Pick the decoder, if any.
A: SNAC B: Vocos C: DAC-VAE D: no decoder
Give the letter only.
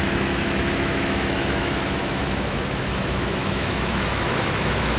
C